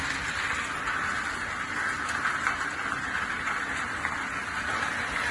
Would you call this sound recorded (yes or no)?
yes